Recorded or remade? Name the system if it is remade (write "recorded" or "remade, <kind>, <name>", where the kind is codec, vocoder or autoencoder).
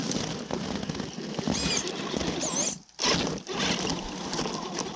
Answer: recorded